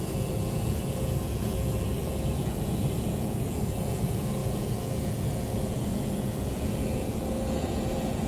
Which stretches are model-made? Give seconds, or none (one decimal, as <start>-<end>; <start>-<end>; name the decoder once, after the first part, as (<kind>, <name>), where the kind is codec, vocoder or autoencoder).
0.0-8.3 (vocoder, Vocos)